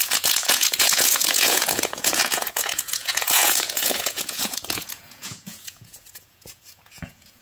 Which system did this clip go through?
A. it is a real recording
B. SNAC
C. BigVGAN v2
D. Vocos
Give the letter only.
D